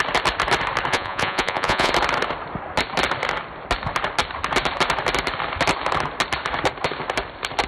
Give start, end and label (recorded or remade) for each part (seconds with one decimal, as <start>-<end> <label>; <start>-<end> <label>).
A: 0.0-0.9 recorded; 0.9-1.9 remade; 1.9-7.7 recorded